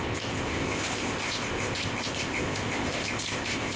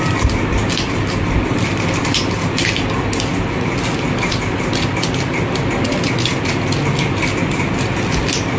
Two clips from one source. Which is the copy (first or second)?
first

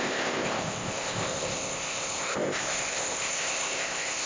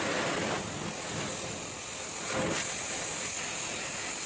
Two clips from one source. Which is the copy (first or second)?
first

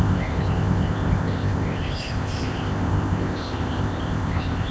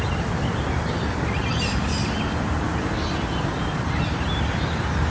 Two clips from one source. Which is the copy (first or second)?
first